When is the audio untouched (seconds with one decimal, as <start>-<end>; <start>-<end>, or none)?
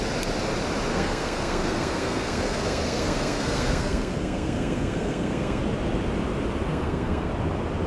0.0-0.9; 5.6-6.7; 7.3-7.9